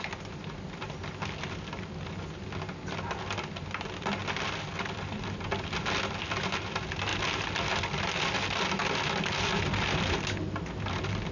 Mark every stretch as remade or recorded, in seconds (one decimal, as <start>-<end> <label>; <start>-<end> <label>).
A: 0.0-11.3 recorded